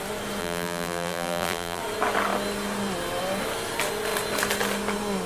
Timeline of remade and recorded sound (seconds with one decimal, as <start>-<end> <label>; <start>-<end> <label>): 0.0-0.4 recorded; 0.4-1.8 remade; 1.8-5.3 recorded